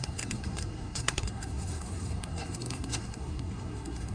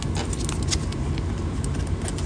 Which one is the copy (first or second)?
first